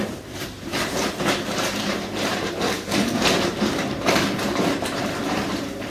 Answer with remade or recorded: remade